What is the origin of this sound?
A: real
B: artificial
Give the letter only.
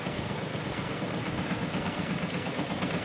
B